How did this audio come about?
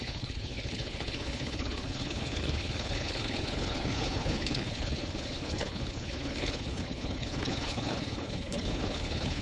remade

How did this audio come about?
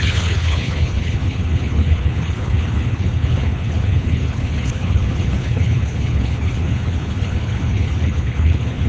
remade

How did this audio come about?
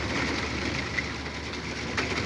recorded